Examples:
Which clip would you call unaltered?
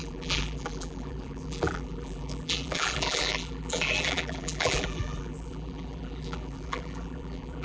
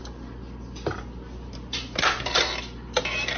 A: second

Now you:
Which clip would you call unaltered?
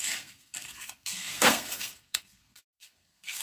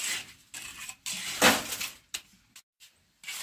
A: second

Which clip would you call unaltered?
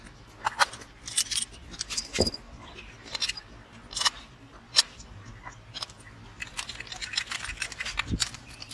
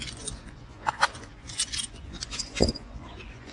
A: first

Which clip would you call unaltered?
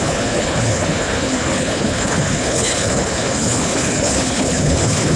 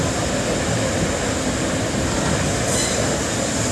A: second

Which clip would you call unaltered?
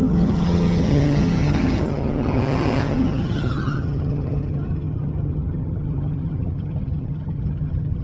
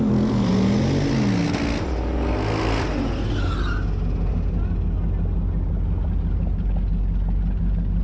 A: second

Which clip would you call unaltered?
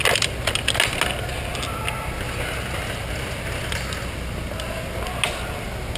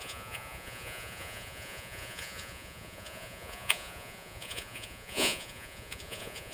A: first